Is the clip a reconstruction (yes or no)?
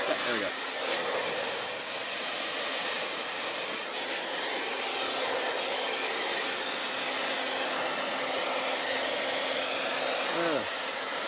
no